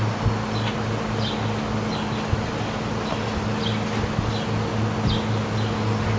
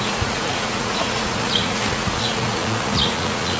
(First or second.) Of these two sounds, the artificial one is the second